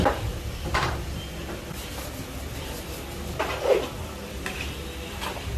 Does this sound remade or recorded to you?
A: remade